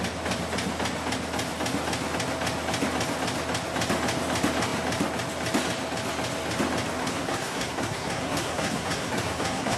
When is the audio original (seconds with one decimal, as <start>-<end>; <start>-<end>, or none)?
0.0-7.0